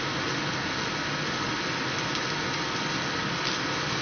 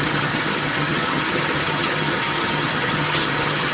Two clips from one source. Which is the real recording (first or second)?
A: first